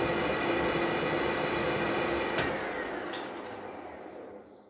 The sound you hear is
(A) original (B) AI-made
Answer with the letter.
A